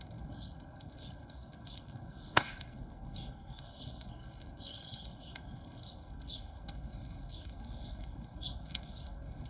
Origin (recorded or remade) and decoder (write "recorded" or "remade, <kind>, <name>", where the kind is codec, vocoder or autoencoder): remade, codec, SNAC